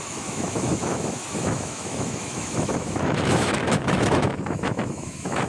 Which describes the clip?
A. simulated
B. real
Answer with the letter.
A